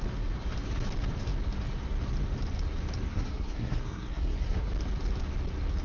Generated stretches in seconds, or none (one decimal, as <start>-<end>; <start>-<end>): 3.1-4.7